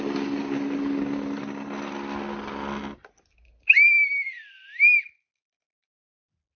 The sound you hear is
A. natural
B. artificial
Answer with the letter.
A